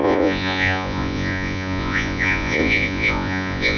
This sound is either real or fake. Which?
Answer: fake